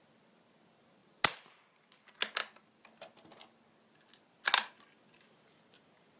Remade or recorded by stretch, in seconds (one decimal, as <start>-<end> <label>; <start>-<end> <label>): 0.0-6.2 recorded